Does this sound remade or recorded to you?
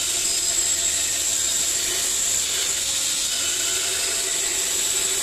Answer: recorded